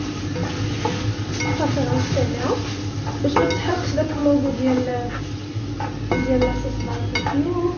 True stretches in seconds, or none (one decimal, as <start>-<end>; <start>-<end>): 0.0-7.8